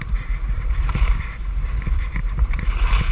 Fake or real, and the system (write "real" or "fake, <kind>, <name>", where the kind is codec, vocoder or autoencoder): fake, vocoder, BigVGAN v2